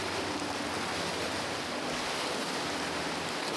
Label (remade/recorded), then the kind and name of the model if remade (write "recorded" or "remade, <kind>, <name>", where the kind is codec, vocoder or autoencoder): recorded